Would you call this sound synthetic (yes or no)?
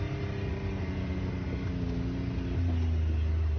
no